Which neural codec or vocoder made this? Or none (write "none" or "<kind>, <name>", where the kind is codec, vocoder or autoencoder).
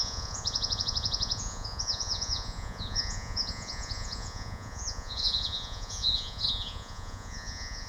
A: vocoder, Vocos